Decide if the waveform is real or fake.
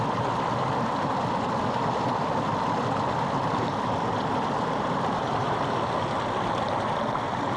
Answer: real